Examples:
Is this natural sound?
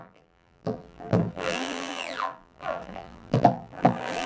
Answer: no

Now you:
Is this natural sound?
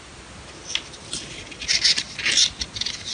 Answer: yes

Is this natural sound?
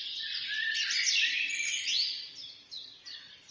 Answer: no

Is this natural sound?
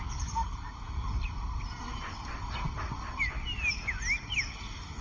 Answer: yes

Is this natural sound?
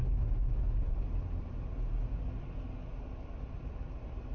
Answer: yes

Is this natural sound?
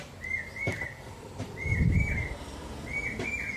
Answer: no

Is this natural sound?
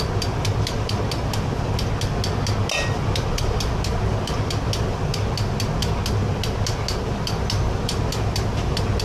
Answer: yes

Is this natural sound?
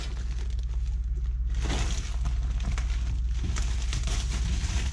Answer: yes